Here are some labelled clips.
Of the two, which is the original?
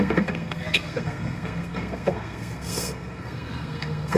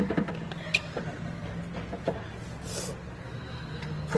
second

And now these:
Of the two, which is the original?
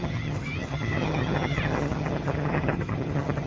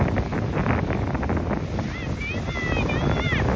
second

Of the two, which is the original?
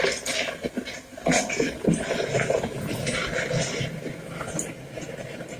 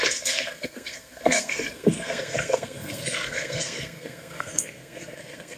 first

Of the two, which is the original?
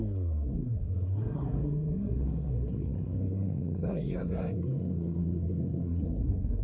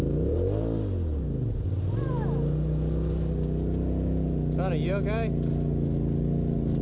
second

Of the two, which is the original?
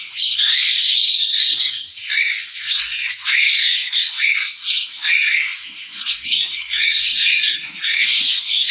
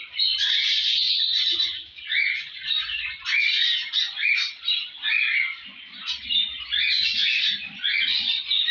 second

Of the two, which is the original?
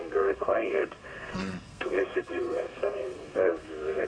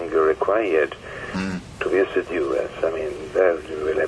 second